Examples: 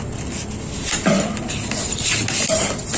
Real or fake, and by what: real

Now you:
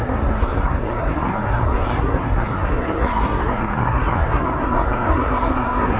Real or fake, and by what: fake, codec, SNAC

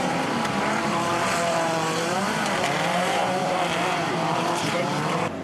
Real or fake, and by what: fake, vocoder, BigVGAN v2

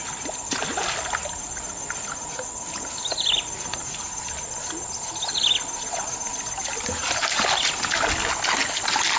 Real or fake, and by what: real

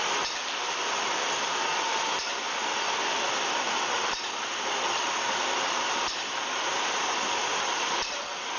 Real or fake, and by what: fake, vocoder, BigVGAN v2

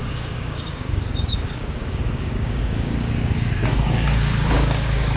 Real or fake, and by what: fake, codec, DAC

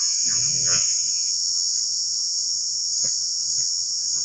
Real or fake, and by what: fake, vocoder, WaveNeXt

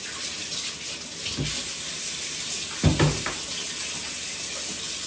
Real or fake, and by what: real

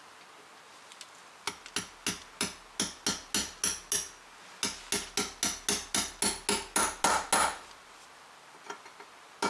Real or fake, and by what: real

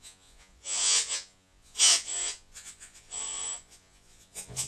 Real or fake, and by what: fake, vocoder, Vocos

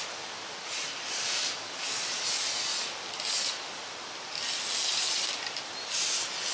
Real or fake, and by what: real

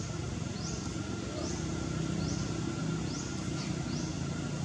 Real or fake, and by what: real